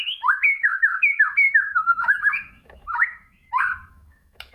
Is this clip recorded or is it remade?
remade